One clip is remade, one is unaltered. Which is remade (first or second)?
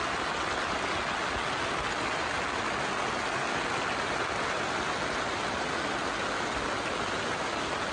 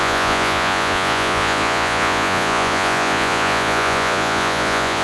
second